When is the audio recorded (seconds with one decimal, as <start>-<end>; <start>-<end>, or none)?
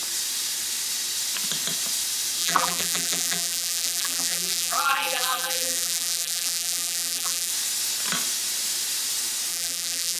0.0-2.4; 7.5-9.5